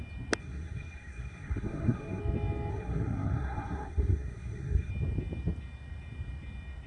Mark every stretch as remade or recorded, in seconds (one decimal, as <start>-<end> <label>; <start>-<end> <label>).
0.0-0.4 recorded; 0.4-2.2 remade; 2.2-2.7 recorded; 2.7-4.9 remade; 4.9-6.9 recorded

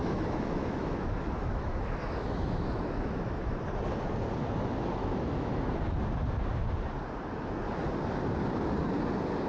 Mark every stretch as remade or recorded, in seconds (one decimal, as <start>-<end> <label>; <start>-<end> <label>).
0.0-3.6 remade; 3.6-5.0 recorded; 5.0-5.7 remade; 5.7-9.5 recorded

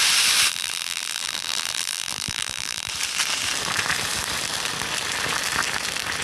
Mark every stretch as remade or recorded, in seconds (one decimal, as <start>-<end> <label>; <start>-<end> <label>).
0.0-0.5 recorded; 0.5-2.9 remade; 2.9-6.2 recorded

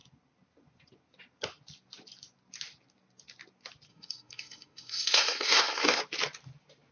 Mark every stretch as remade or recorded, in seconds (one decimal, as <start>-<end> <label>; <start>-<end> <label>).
0.0-3.9 recorded; 3.9-6.0 remade; 6.0-6.9 recorded

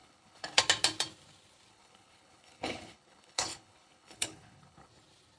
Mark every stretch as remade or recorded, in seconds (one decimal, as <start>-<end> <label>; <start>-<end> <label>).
0.0-0.6 remade; 0.6-1.7 recorded; 1.7-4.9 remade; 4.9-5.4 recorded

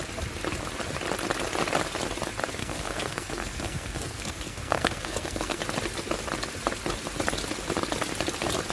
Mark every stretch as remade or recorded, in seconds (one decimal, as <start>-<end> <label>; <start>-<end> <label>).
0.0-2.6 recorded; 2.6-5.6 remade; 5.6-8.7 recorded

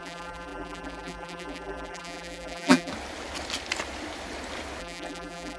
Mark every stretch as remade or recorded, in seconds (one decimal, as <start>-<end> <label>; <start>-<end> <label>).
0.0-2.9 remade; 2.9-4.8 recorded; 4.8-5.6 remade

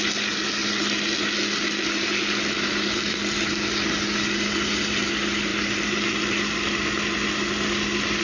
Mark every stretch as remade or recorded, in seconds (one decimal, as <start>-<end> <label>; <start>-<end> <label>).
0.0-8.2 recorded